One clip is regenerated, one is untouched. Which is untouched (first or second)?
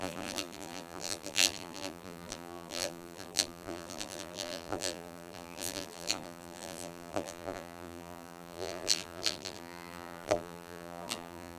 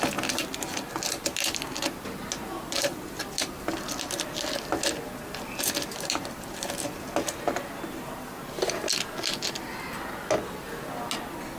second